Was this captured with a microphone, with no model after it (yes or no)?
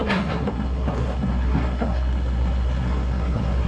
no